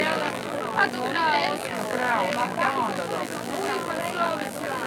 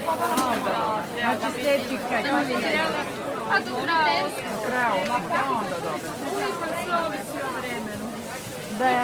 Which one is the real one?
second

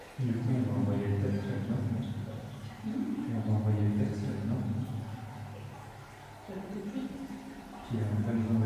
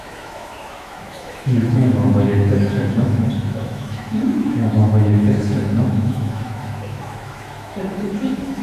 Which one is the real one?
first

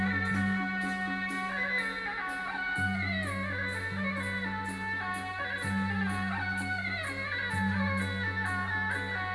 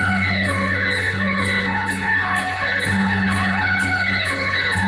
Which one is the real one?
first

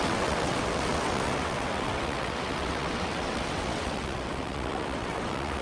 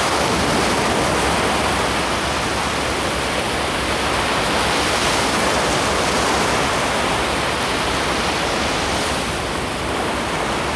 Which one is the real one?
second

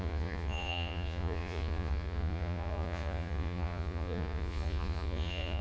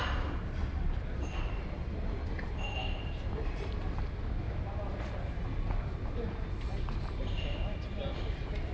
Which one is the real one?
second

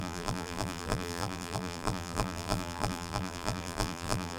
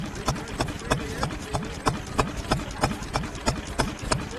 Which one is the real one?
second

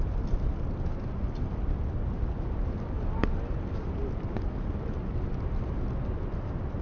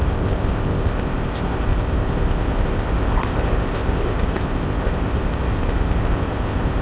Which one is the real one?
first